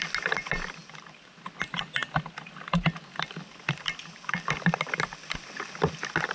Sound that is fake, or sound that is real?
real